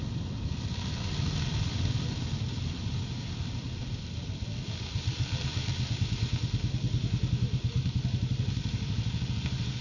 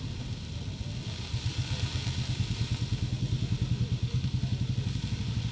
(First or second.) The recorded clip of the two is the second